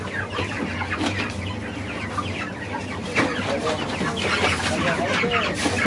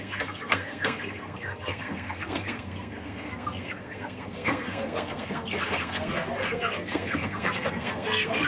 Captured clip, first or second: first